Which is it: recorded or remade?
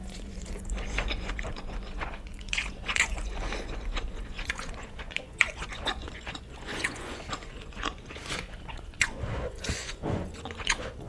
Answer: remade